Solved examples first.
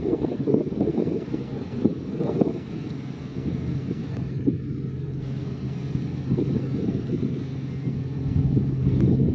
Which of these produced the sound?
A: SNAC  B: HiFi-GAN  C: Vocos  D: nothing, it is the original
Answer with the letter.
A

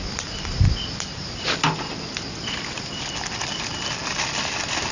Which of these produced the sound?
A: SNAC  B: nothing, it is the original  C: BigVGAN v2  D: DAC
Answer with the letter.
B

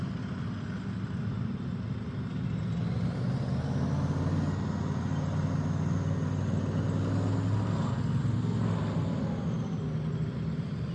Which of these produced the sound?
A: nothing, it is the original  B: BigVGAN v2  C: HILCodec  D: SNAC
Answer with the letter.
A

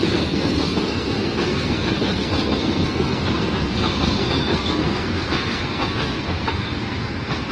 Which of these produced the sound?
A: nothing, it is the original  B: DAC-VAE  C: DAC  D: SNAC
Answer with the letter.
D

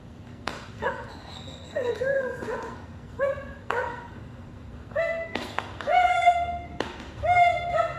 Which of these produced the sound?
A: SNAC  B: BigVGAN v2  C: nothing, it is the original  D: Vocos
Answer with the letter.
A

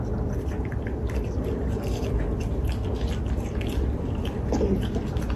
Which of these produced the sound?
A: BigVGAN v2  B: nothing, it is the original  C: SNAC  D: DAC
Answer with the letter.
B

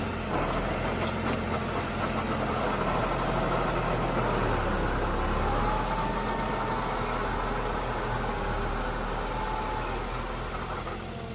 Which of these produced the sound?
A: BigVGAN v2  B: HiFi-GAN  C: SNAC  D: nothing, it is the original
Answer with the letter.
D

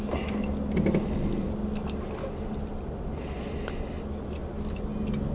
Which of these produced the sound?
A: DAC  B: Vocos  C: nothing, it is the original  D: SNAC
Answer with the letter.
C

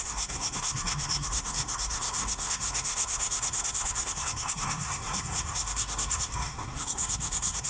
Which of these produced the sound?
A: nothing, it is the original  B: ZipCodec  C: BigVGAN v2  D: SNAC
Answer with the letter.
D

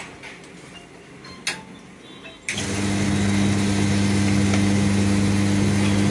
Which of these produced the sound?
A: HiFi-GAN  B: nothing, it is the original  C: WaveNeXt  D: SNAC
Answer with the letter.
B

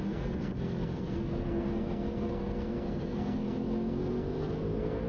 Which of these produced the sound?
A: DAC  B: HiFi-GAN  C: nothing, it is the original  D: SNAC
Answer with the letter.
D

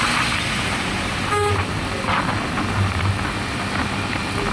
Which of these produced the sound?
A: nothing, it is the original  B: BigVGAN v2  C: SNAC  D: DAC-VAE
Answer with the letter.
A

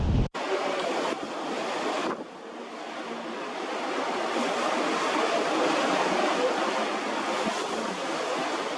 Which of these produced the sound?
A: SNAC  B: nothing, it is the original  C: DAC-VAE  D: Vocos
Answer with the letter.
B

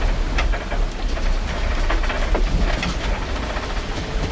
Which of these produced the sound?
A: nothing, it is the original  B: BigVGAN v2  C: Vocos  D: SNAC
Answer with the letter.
A